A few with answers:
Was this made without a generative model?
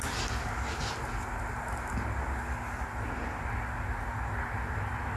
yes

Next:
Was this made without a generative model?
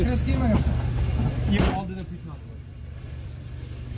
yes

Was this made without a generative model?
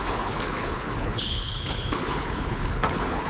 no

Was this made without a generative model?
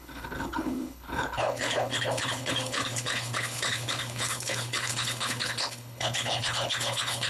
no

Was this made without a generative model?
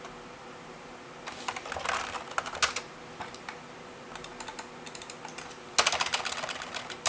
yes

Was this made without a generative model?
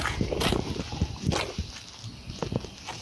yes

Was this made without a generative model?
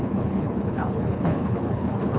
no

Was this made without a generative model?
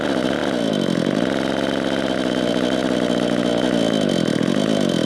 yes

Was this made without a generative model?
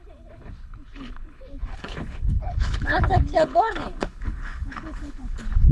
no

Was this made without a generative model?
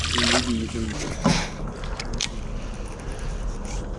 yes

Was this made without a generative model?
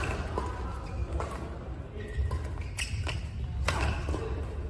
yes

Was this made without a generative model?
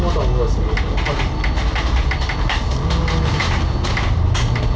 yes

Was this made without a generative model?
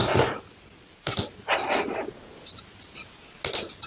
yes